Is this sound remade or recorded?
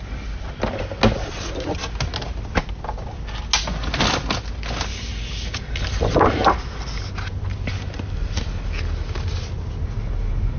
recorded